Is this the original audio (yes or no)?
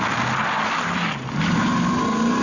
yes